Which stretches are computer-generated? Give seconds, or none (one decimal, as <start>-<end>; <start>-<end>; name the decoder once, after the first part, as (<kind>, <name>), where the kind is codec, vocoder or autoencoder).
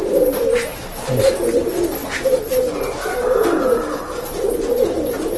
none